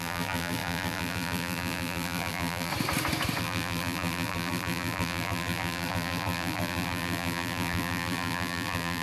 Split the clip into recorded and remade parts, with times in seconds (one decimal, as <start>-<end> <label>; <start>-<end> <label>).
0.0-2.7 remade; 2.7-3.4 recorded; 3.4-9.0 remade